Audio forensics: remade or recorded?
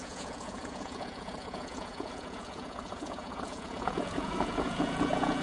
remade